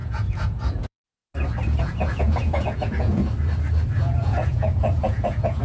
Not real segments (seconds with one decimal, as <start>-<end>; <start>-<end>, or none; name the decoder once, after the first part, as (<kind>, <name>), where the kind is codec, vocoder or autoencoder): 0.0-1.2 (vocoder, Vocos); 1.8-3.2; 4.0-5.6